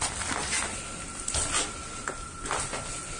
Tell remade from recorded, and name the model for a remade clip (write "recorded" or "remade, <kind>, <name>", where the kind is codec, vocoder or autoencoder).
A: recorded